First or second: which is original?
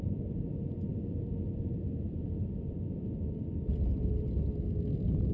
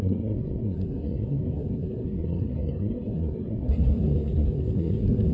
first